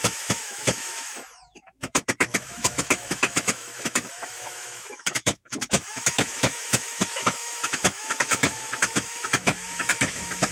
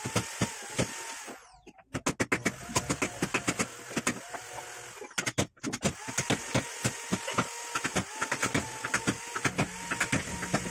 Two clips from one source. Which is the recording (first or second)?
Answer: second